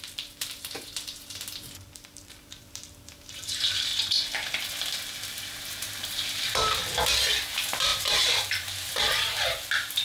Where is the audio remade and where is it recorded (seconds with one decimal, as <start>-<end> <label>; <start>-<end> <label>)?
0.0-3.9 remade; 3.9-5.3 recorded; 5.3-6.8 remade; 6.8-7.5 recorded; 7.5-10.0 remade

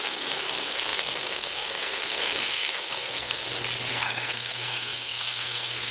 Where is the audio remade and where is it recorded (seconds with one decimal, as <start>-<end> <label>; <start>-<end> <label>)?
0.0-3.4 remade; 3.4-3.9 recorded; 3.9-5.9 remade

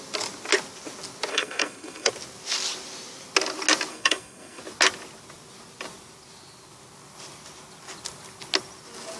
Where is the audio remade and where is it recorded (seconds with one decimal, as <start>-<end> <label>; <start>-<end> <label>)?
0.0-1.3 recorded; 1.3-2.1 remade; 2.1-3.9 recorded; 3.9-4.6 remade; 4.6-9.2 recorded